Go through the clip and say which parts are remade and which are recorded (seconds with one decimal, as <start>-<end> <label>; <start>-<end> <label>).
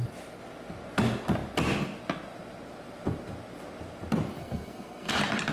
0.0-4.4 recorded; 4.4-5.1 remade; 5.1-5.5 recorded